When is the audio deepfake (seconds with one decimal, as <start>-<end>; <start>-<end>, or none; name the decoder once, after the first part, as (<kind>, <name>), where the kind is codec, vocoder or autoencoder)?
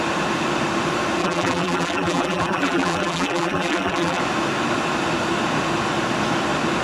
1.2-4.2 (vocoder, BigVGAN v2)